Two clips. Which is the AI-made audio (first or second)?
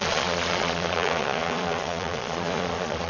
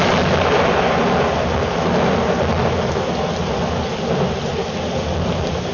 first